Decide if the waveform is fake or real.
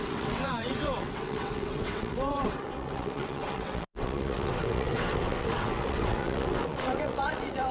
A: fake